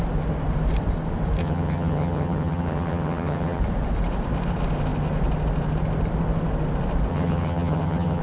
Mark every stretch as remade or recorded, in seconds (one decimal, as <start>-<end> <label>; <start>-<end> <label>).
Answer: 0.0-1.4 recorded; 1.4-3.6 remade; 3.6-7.1 recorded; 7.1-8.2 remade